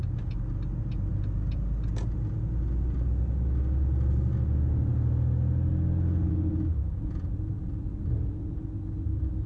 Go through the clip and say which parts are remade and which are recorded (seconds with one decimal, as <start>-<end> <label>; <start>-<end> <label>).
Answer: 0.0-9.5 recorded